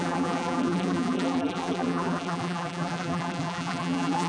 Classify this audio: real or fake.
fake